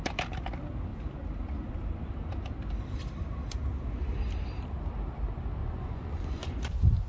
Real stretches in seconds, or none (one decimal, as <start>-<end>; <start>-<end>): 0.0-5.6; 6.6-7.1